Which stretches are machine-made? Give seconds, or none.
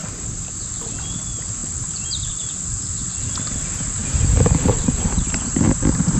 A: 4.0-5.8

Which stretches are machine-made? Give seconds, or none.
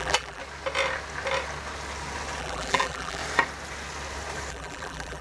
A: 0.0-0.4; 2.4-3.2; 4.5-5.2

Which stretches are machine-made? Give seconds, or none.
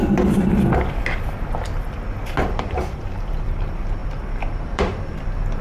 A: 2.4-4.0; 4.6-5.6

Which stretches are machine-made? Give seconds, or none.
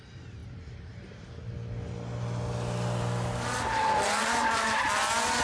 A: none